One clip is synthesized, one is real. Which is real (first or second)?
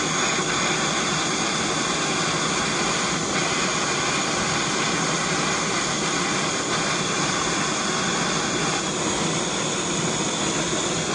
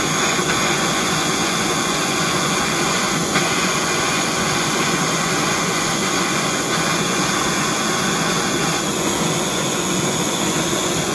first